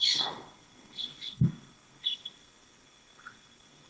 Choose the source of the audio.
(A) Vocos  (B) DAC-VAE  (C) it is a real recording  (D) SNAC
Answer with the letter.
D